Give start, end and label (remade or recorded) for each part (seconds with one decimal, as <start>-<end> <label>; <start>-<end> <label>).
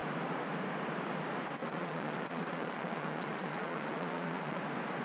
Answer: 0.0-1.6 recorded; 1.6-4.6 remade; 4.6-5.0 recorded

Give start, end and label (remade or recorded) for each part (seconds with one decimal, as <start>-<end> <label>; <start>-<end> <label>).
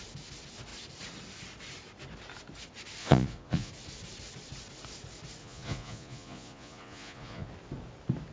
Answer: 0.0-3.0 recorded; 3.0-3.7 remade; 3.7-5.4 recorded; 5.4-7.5 remade; 7.5-8.3 recorded